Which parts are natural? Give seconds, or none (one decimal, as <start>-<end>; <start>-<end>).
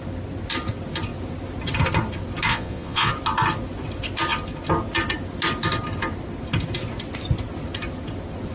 0.0-2.5; 3.1-8.5